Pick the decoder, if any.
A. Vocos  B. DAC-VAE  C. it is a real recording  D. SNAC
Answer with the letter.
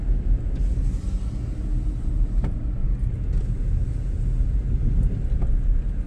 C